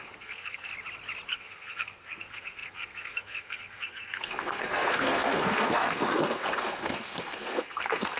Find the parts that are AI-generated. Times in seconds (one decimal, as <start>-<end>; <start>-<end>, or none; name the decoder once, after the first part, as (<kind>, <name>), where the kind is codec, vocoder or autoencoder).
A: 0.0-0.7 (codec, SNAC); 1.3-8.2